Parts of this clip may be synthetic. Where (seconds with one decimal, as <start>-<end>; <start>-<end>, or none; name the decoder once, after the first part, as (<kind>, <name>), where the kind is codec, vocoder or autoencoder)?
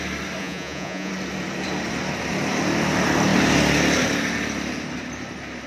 0.4-1.1 (vocoder, Vocos)